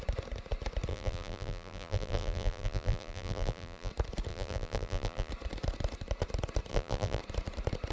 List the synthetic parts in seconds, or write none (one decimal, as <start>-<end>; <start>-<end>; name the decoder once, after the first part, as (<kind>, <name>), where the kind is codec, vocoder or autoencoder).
0.9-3.9 (vocoder, BigVGAN v2); 4.3-5.3; 6.7-7.2